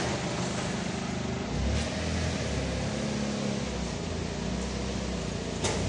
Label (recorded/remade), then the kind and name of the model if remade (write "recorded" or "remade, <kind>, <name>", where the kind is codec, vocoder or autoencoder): recorded